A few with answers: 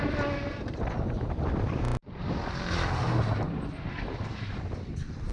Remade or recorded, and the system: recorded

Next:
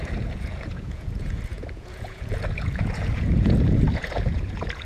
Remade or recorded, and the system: remade, vocoder, Vocos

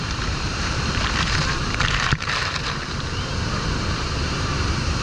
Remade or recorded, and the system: remade, vocoder, BigVGAN v2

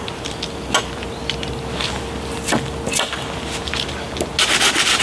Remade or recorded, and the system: recorded